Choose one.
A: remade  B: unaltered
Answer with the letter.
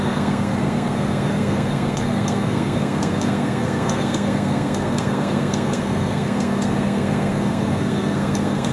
A